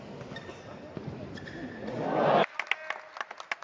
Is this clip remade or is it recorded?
recorded